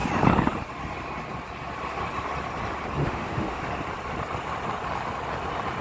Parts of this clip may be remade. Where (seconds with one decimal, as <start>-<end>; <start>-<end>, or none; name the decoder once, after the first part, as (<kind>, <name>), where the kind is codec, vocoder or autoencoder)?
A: 3.0-3.6 (autoencoder, DAC-VAE)